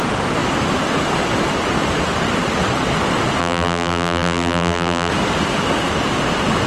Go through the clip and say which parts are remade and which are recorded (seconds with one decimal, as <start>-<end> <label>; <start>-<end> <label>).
0.0-3.4 recorded; 3.4-5.1 remade; 5.1-6.7 recorded